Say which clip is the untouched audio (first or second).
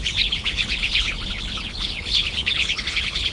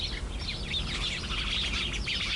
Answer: second